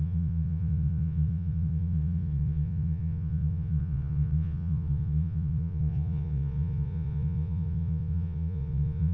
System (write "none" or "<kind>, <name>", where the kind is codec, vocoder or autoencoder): vocoder, Vocos